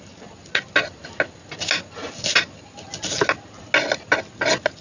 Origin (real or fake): real